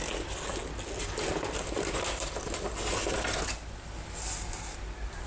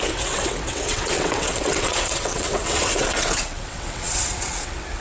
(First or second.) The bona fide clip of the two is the first